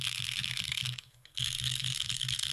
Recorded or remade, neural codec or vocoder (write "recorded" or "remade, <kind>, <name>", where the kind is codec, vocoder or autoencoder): remade, codec, SNAC